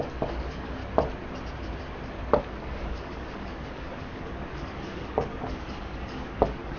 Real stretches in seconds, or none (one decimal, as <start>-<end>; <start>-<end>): 0.8-2.4